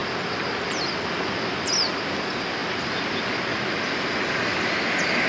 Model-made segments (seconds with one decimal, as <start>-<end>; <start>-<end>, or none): none